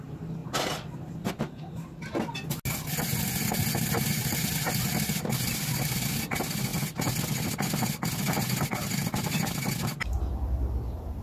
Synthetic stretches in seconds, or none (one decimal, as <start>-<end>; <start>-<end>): none